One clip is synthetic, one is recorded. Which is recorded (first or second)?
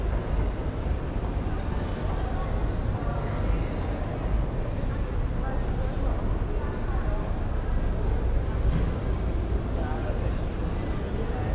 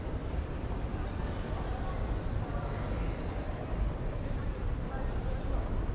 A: first